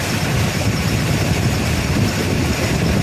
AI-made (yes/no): no